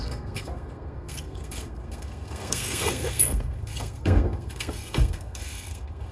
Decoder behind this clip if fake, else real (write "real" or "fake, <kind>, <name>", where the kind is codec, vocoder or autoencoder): fake, codec, SNAC